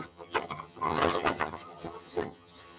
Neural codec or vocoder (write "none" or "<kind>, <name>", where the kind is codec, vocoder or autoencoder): vocoder, HiFi-GAN